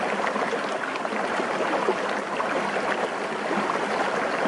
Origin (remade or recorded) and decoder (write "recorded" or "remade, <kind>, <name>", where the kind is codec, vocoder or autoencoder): recorded